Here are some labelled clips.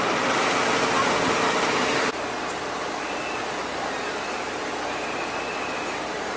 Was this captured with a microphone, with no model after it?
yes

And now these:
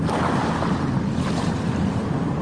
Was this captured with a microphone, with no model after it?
yes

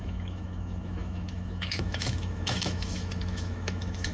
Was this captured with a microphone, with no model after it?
no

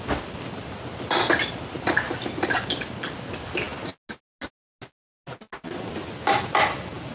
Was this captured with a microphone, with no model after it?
yes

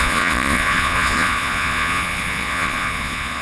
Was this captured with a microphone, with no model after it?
no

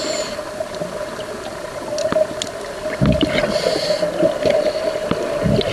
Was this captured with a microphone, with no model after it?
yes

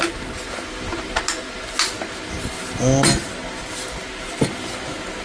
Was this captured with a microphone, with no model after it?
yes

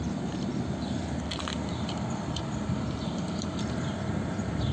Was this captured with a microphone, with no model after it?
no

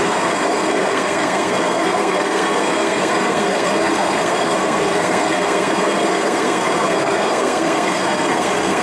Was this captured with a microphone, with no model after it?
no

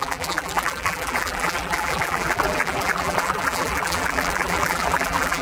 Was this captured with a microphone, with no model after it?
no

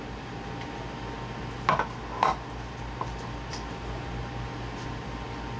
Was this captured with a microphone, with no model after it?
yes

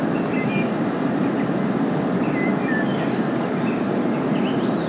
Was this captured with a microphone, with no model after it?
yes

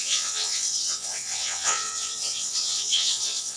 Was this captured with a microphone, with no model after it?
no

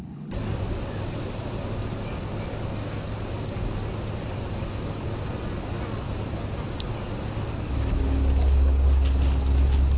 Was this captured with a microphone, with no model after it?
yes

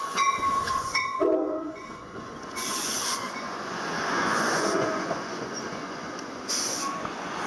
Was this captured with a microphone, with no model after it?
no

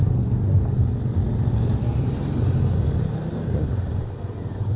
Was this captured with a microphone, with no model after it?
yes